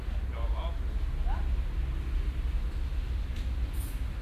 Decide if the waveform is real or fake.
real